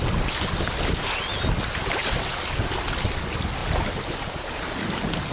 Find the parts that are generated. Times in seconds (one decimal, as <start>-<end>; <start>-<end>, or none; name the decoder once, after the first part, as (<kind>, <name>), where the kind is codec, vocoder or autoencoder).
none